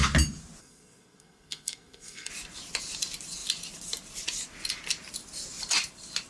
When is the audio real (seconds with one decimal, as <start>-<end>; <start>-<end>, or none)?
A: 0.0-0.6; 2.3-6.3

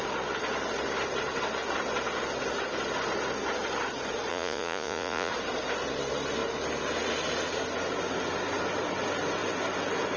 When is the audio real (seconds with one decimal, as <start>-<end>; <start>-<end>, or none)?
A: 0.0-4.3; 5.3-10.2

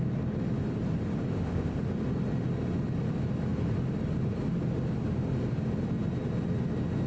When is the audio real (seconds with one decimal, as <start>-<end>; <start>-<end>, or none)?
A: 0.0-1.3; 1.8-7.1

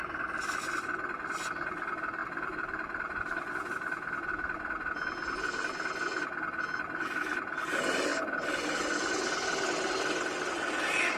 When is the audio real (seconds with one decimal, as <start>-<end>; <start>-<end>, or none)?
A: 0.0-2.2; 3.5-11.2

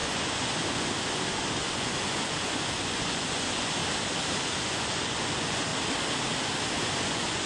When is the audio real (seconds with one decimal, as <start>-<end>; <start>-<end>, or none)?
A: 3.8-4.6; 5.7-7.0

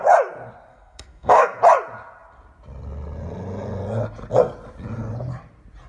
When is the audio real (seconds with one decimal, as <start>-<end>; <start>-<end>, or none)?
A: 0.0-0.7; 1.6-5.9

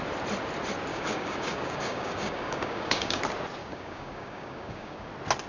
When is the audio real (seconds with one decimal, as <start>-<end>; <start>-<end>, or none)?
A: 0.0-0.9; 3.2-3.6; 5.1-5.5

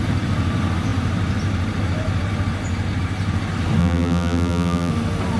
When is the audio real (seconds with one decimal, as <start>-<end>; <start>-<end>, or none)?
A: 0.0-3.8; 4.9-5.4